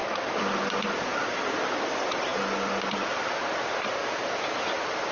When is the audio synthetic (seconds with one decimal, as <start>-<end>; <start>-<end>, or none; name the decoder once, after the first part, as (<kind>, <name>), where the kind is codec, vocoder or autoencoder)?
4.0-4.6 (vocoder, Vocos)